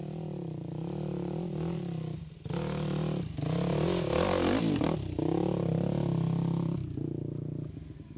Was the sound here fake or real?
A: real